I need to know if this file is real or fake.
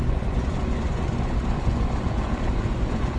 fake